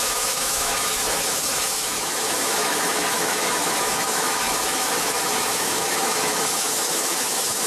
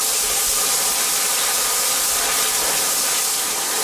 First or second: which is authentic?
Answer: second